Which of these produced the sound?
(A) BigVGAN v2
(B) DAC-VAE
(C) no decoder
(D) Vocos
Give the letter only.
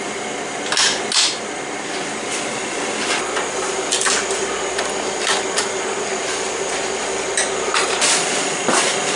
C